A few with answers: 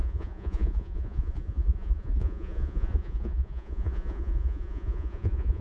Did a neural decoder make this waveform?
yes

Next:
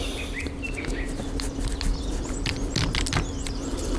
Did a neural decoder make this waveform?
no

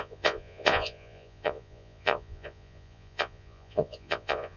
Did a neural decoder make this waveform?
yes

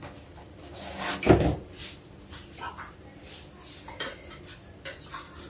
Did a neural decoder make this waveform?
no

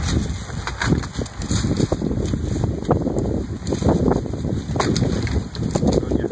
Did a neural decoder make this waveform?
no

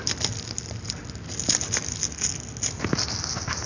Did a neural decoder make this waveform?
no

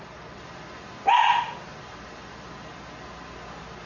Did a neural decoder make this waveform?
no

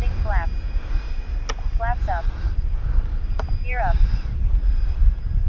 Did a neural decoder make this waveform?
no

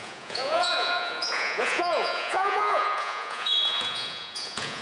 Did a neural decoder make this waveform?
yes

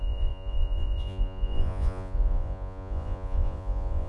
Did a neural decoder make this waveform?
yes